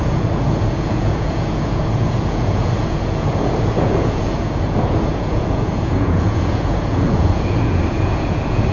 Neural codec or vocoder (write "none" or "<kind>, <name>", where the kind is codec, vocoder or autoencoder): vocoder, Vocos